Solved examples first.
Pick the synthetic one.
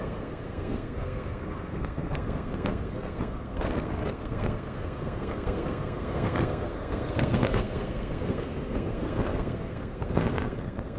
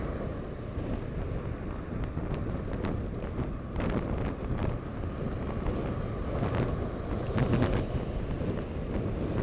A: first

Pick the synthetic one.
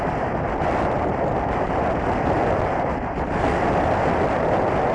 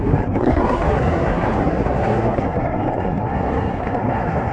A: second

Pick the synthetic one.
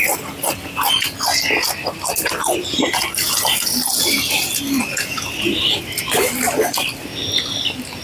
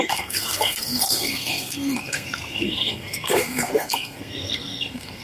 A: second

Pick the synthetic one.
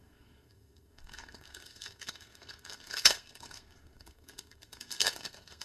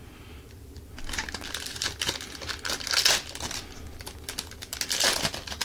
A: first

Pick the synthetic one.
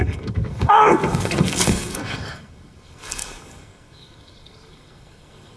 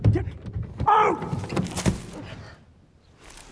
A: first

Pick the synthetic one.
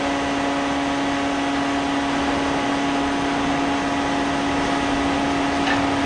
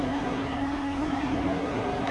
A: second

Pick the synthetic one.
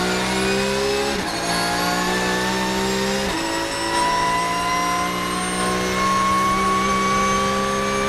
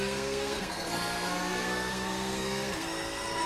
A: second